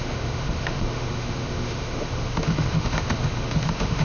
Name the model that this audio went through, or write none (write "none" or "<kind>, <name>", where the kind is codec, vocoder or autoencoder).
autoencoder, DAC-VAE